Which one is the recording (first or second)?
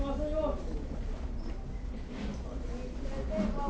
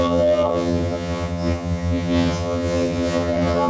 first